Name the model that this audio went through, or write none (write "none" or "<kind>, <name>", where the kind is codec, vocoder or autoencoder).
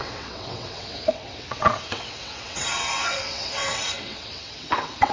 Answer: vocoder, WaveNeXt